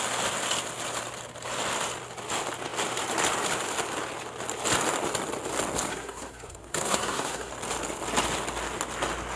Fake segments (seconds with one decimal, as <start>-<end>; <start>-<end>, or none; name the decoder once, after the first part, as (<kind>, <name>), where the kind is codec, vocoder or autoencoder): 5.9-7.5 (codec, SNAC)